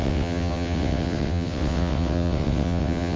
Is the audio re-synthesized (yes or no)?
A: yes